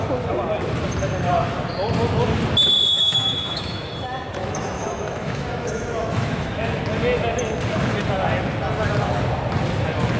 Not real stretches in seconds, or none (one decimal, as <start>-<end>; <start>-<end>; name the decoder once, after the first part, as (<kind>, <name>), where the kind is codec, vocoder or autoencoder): 2.9-3.9 (autoencoder, DAC-VAE); 4.4-6.8